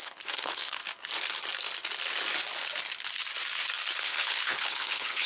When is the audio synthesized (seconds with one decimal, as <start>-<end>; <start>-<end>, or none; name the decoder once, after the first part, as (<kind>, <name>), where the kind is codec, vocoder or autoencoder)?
0.0-0.8 (codec, HILCodec); 4.0-5.3